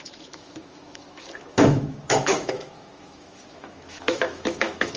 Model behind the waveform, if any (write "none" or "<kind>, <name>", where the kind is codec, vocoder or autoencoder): autoencoder, DAC-VAE